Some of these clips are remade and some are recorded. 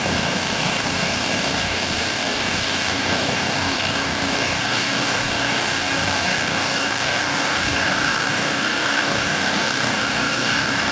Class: remade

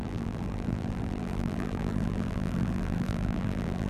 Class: remade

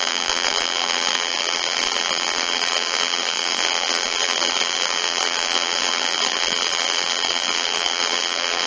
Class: remade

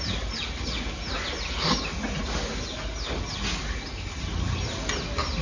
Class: recorded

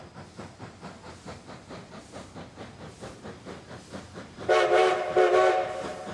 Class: recorded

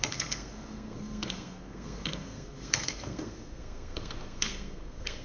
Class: remade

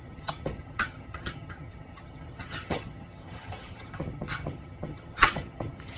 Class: remade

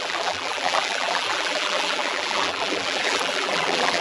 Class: remade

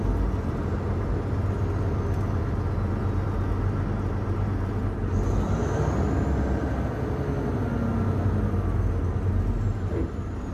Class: recorded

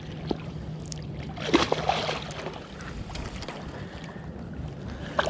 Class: recorded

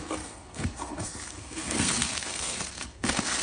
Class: remade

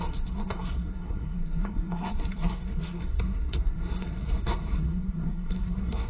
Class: remade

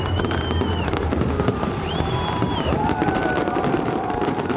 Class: remade